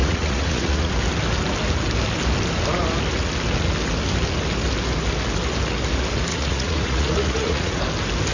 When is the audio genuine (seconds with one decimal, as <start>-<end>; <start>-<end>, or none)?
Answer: 0.9-6.3; 7.8-8.3